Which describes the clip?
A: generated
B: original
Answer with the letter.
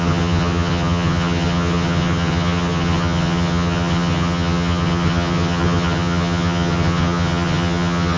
A